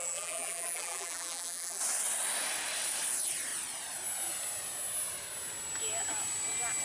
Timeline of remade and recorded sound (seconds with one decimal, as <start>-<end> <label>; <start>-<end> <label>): 0.0-1.8 remade; 1.8-6.8 recorded